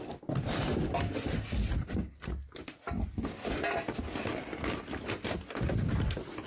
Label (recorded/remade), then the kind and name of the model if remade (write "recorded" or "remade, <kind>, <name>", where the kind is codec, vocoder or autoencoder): recorded